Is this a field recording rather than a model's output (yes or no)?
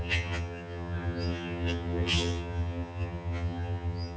no